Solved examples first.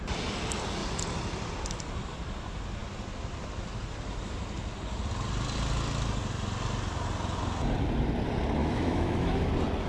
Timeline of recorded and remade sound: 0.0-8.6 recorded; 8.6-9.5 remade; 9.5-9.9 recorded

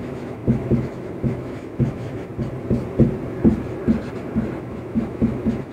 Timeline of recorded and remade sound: 0.0-2.3 remade; 2.3-4.6 recorded; 4.6-5.7 remade

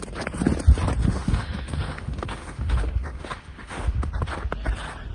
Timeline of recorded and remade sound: 0.0-1.0 recorded; 1.0-4.1 remade; 4.1-5.1 recorded